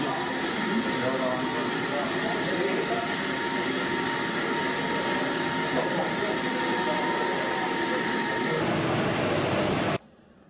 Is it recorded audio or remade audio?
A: recorded